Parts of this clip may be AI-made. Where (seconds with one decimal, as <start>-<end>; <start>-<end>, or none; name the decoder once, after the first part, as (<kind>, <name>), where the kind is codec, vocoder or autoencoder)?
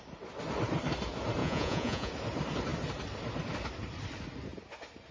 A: 1.4-2.1 (vocoder, Vocos)